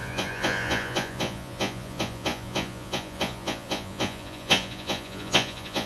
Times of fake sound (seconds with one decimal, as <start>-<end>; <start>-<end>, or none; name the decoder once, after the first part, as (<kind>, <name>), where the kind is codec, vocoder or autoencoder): 0.0-5.9 (vocoder, Vocos)